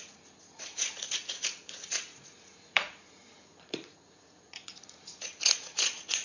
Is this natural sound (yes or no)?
no